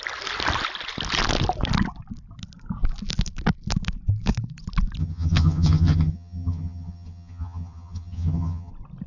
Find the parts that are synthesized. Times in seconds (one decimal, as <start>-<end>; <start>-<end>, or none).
5.0-8.7